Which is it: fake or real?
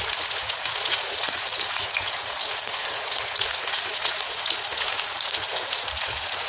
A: fake